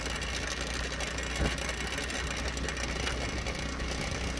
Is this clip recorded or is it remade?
recorded